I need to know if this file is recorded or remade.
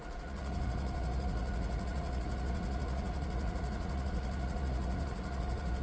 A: remade